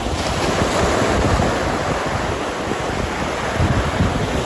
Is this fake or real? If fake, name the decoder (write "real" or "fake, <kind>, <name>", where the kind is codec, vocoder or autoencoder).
real